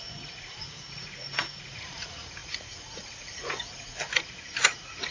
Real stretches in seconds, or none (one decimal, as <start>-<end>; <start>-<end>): none